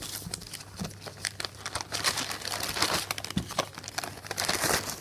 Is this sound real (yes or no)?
yes